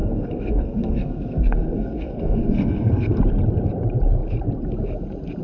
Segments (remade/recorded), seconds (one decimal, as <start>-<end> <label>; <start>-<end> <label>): 0.0-3.2 remade; 3.2-5.4 recorded